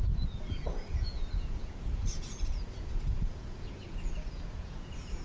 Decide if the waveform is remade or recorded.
remade